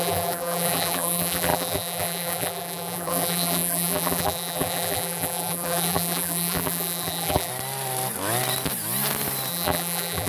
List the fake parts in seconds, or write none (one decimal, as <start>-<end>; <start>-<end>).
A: 0.0-7.5; 9.5-10.3